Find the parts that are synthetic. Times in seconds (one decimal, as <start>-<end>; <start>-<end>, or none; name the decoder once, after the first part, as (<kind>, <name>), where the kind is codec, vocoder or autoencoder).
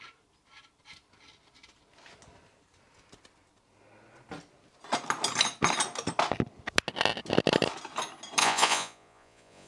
8.4-9.7 (vocoder, Vocos)